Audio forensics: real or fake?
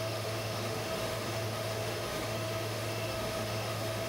fake